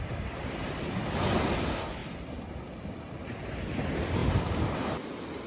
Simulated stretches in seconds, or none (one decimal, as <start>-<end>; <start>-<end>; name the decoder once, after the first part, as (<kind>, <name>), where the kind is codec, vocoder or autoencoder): none